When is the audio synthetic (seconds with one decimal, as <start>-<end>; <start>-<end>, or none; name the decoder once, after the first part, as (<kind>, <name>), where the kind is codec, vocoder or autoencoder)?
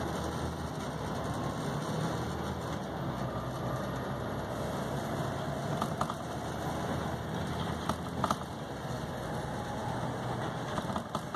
none